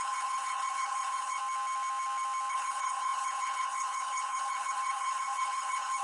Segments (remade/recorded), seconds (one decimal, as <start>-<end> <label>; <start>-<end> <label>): 0.0-1.4 remade; 1.4-2.5 recorded; 2.5-6.0 remade